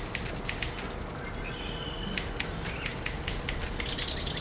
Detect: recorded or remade recorded